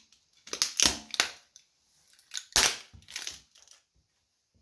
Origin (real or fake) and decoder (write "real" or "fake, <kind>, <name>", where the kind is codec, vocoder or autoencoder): real